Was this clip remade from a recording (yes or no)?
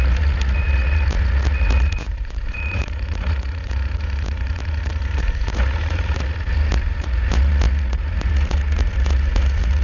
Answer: yes